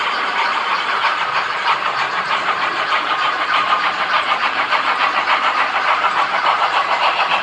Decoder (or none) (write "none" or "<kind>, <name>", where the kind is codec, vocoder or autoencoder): vocoder, BigVGAN v2